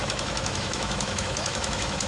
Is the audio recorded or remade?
remade